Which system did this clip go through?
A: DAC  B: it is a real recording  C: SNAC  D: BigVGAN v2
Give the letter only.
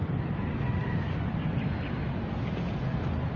B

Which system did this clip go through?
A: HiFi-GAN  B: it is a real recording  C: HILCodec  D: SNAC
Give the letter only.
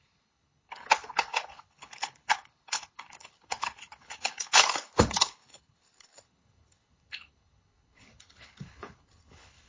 C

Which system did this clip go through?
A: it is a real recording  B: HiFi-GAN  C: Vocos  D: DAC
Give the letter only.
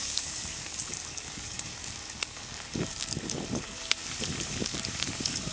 D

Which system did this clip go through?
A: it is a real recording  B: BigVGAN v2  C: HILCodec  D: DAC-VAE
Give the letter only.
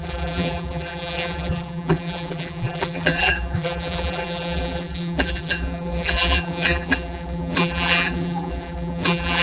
B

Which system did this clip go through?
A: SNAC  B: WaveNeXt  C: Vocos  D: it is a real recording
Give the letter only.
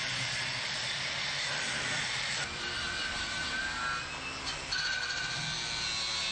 D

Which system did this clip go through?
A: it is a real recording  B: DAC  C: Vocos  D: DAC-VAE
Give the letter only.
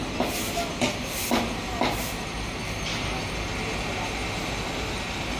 A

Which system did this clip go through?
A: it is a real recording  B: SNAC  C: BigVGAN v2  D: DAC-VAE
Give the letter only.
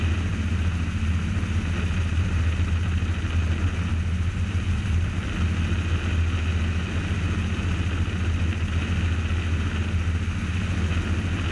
A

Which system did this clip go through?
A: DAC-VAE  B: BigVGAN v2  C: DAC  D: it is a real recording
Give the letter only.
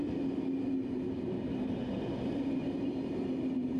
D